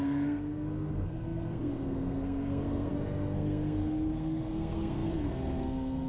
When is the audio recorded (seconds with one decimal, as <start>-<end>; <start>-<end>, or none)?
none

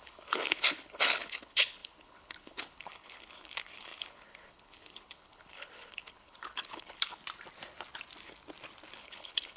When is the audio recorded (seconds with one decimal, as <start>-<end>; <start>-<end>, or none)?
7.2-8.9